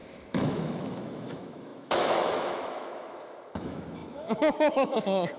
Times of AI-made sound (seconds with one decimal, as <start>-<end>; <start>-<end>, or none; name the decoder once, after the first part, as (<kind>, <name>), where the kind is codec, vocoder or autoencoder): 0.0-5.4 (autoencoder, DAC-VAE)